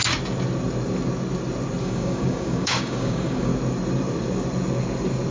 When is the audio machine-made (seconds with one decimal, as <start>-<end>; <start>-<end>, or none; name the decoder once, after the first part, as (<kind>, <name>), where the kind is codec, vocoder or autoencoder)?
1.8-3.5 (codec, DAC)